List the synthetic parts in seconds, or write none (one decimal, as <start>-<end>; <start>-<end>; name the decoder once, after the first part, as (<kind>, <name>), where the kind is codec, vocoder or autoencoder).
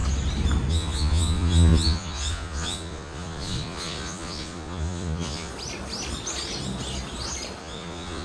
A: 0.7-5.5 (vocoder, Vocos); 7.6-8.2